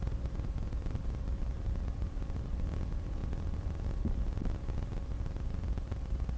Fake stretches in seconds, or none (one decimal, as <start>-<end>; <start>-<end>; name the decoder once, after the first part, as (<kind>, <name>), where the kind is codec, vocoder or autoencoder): none